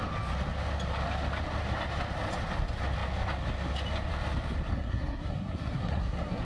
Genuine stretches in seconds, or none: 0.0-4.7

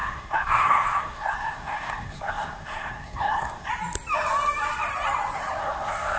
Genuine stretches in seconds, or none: 3.7-5.6

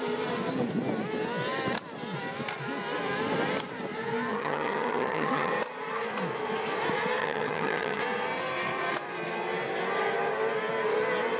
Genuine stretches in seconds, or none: 0.0-4.3; 5.5-7.2; 8.0-11.4

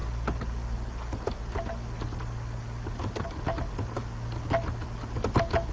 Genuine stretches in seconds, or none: 0.0-5.7